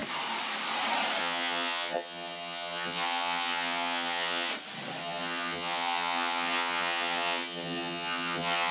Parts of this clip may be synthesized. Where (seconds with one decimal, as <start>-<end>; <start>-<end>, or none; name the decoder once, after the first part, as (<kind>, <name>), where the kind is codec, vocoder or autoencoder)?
1.2-4.5 (vocoder, HiFi-GAN); 5.0-8.7